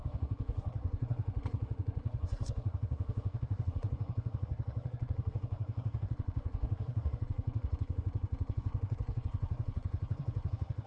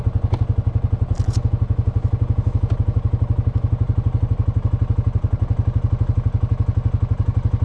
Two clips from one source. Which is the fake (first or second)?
first